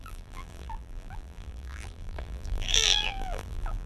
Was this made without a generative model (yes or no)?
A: no